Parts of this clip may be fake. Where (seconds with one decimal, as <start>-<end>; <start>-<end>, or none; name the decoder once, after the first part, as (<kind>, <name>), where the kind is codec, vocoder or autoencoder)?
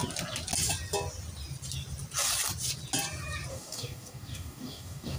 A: 3.5-5.2 (codec, DAC)